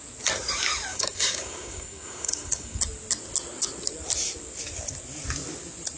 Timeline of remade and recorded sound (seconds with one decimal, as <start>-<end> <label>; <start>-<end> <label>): 0.0-0.9 recorded; 0.9-2.8 remade; 2.8-6.0 recorded